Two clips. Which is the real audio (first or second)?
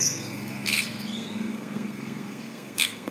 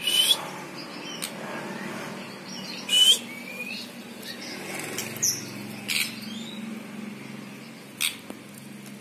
second